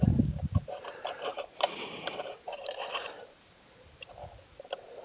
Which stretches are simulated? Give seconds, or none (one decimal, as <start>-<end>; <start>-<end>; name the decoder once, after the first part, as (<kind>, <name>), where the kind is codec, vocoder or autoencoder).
0.0-4.1 (vocoder, BigVGAN v2)